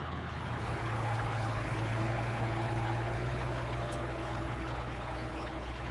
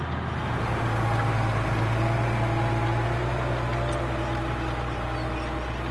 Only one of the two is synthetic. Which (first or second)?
first